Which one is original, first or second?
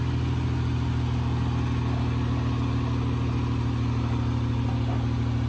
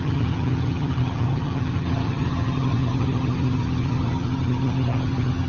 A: first